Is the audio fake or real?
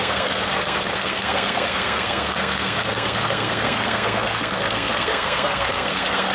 fake